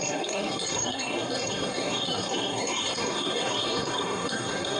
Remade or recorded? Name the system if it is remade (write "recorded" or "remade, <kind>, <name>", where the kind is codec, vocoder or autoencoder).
remade, codec, SNAC